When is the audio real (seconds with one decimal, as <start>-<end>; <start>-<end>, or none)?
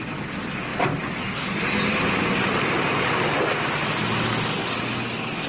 0.0-5.5